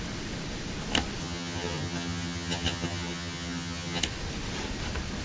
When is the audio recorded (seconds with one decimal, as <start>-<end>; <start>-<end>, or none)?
0.0-1.2; 4.0-5.2